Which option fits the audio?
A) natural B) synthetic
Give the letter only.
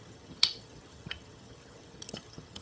B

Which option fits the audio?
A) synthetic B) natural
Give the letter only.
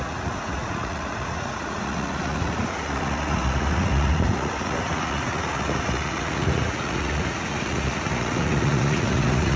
A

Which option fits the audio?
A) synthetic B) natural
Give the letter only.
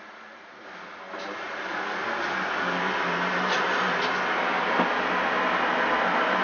B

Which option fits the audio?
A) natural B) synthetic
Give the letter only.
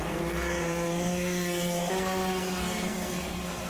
B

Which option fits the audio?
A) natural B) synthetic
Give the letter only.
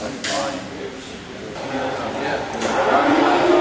A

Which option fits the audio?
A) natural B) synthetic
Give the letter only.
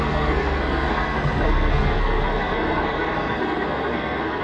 B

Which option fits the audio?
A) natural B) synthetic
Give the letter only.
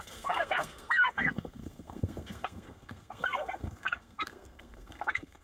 B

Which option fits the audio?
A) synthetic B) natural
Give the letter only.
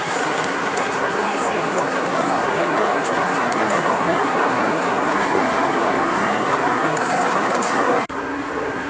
A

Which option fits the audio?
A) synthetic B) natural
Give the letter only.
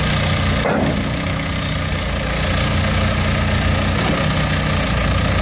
B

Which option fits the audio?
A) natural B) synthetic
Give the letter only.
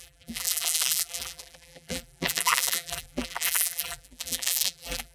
B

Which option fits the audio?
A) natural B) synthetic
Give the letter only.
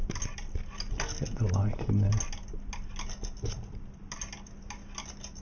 A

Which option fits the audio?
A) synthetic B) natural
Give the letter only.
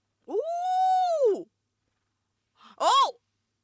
A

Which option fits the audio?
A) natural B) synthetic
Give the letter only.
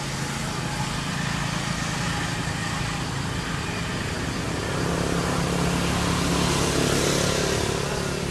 A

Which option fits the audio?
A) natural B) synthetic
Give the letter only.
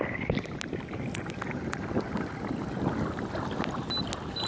A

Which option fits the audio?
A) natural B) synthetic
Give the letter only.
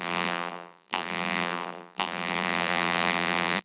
B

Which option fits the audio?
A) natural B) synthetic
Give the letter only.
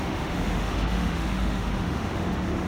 B